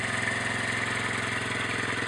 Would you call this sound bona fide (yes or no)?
yes